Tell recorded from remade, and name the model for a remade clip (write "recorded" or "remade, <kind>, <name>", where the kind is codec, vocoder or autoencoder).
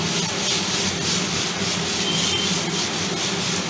recorded